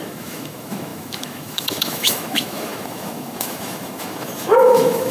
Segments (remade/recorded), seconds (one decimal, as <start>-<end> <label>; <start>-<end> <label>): 0.0-5.1 remade